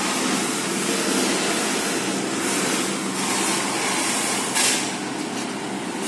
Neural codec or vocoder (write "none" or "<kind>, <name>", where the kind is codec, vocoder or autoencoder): none